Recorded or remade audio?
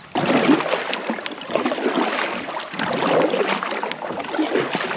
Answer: recorded